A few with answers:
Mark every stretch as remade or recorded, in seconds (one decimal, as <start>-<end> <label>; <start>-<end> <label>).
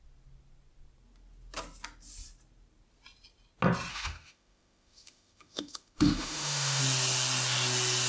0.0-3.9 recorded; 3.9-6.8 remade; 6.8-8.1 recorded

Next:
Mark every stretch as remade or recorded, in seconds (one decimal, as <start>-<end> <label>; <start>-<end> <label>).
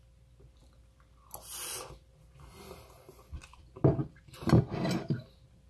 0.0-5.7 recorded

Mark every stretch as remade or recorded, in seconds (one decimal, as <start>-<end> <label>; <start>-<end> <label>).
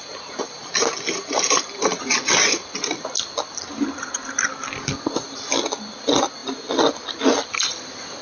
0.0-8.2 recorded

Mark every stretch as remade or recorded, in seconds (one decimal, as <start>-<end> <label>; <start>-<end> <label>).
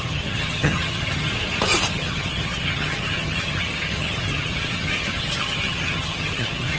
0.0-1.3 remade; 1.3-1.9 recorded; 1.9-6.8 remade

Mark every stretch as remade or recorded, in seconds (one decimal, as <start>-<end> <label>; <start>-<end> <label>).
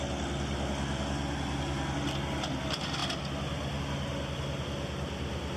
0.0-5.6 recorded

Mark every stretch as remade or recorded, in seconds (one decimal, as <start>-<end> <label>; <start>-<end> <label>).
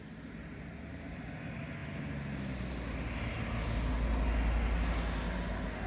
0.0-5.9 recorded